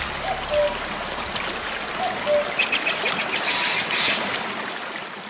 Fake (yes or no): no